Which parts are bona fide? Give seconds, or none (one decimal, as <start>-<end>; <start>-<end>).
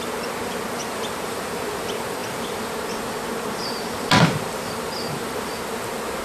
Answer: 0.0-0.8; 1.5-2.2; 5.5-6.2